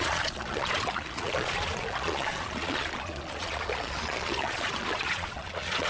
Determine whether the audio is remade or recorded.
remade